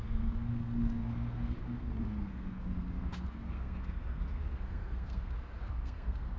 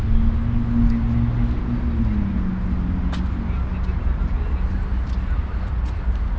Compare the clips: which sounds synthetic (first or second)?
first